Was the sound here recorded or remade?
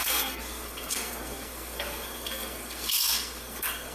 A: remade